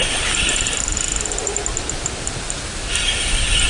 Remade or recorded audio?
recorded